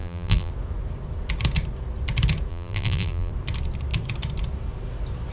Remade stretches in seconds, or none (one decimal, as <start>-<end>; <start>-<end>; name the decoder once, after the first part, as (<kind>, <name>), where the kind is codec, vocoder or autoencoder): 0.0-0.5 (vocoder, BigVGAN v2); 2.5-3.3